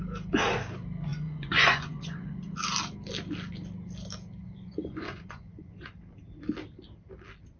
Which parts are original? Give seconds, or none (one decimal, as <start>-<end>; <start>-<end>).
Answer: 0.0-1.1; 2.5-4.4; 5.9-7.6